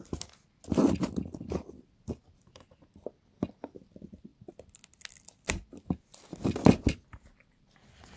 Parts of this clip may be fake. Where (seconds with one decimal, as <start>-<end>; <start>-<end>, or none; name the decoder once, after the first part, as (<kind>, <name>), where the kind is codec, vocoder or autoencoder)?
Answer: none